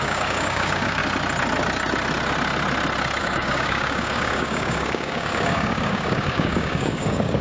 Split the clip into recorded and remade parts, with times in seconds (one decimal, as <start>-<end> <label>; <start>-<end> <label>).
0.0-1.0 remade; 1.0-3.2 recorded; 3.2-7.4 remade